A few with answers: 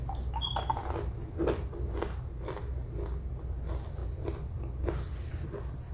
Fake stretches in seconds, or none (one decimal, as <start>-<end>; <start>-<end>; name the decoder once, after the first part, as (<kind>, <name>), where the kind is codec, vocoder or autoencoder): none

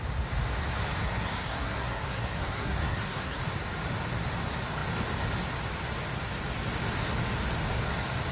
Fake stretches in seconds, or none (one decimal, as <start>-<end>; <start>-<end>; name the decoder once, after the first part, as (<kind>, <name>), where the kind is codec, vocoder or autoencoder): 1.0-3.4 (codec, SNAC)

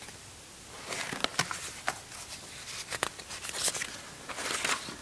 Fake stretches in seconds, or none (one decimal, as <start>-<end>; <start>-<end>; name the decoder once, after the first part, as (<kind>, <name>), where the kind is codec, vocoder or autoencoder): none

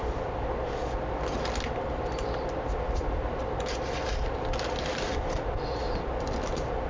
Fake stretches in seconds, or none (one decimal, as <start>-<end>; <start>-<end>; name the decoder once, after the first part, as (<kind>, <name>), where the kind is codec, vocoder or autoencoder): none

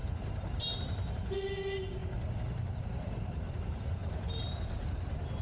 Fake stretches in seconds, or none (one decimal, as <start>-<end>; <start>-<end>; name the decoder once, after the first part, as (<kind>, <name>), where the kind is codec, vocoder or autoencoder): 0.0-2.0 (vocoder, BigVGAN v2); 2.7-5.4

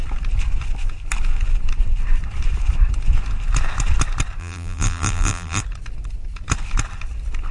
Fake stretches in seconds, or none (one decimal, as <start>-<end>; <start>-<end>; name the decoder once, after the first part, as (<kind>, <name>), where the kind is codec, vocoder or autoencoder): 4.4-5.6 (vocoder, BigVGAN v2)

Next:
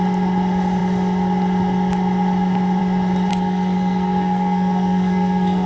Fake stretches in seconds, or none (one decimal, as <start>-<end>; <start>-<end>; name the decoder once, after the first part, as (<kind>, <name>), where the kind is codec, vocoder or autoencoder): 3.3-5.7 (codec, SNAC)

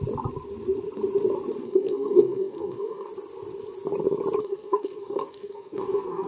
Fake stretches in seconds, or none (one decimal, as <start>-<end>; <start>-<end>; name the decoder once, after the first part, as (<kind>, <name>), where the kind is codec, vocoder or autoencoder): 1.6-3.1 (codec, SNAC); 4.4-6.3